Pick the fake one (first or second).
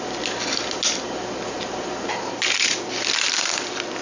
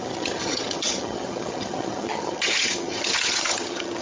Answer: second